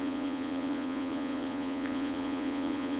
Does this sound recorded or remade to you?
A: remade